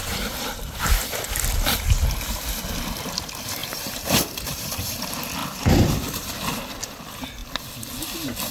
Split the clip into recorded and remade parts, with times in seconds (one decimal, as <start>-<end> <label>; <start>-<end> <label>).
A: 0.0-0.8 remade; 0.8-3.6 recorded; 3.6-5.0 remade; 5.0-8.5 recorded